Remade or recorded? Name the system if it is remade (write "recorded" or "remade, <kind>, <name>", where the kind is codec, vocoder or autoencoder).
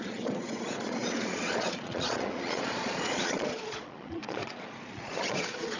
remade, vocoder, Vocos